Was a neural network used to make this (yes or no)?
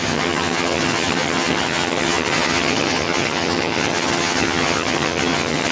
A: yes